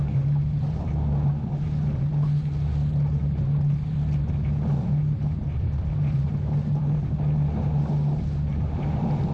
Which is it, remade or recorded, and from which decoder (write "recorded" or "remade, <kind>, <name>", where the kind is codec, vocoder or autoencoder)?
recorded